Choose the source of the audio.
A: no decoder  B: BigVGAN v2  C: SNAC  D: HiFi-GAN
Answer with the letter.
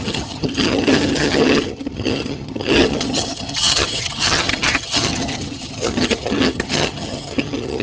D